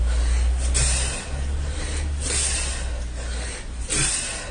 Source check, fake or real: real